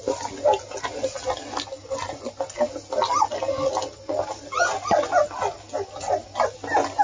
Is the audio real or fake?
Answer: real